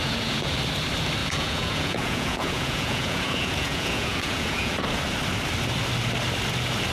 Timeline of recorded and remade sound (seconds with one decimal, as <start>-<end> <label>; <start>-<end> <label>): 0.0-0.5 remade; 0.5-1.2 recorded; 1.2-4.7 remade; 4.7-6.9 recorded